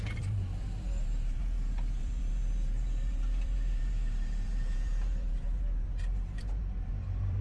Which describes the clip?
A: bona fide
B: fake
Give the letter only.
B